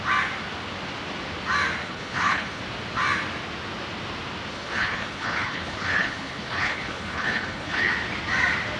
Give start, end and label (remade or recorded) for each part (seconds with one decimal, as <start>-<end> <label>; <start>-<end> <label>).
0.0-1.8 recorded; 1.8-2.6 remade; 2.6-4.5 recorded; 4.5-7.9 remade; 7.9-8.8 recorded